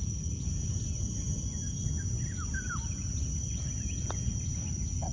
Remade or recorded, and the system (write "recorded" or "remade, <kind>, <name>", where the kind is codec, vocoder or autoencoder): recorded